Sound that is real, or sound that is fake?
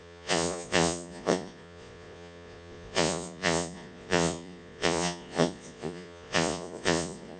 fake